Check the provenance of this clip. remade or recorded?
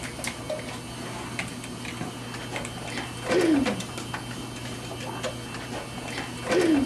recorded